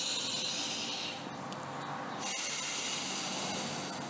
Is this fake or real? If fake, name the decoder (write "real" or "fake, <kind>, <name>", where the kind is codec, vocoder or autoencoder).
real